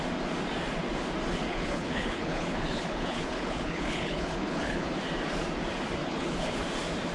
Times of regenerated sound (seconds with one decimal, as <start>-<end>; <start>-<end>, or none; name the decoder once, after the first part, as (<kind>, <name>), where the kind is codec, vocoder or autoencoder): 1.5-5.0 (codec, HILCodec); 6.0-6.6